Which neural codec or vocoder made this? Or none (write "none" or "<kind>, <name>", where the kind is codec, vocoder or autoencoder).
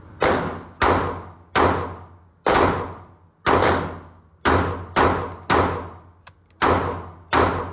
none